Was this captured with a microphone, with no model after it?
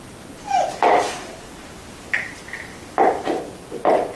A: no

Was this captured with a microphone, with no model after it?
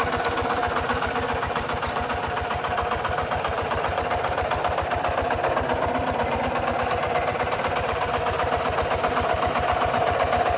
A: no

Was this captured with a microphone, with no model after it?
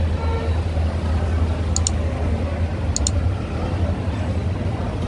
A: yes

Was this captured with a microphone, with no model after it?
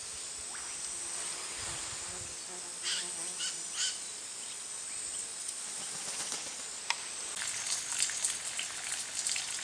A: yes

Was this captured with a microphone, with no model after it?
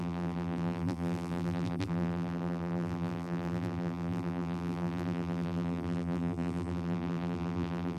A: no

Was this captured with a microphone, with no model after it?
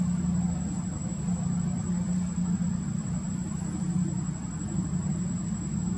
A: yes